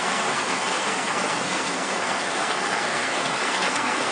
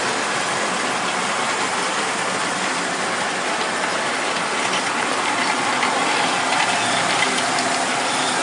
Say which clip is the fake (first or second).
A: first